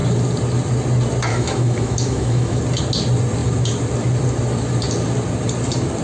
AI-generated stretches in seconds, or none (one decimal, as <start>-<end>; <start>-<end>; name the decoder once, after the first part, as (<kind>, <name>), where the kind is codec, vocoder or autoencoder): 1.3-2.6 (autoencoder, DAC-VAE)